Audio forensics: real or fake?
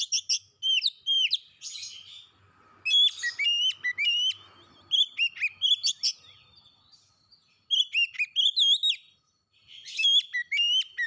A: real